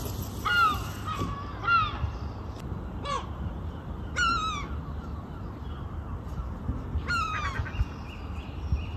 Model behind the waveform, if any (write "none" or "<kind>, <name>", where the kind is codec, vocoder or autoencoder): none